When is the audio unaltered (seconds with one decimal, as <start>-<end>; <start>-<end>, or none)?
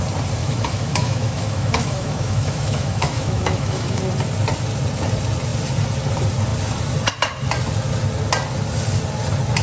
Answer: 0.0-0.4; 4.0-9.6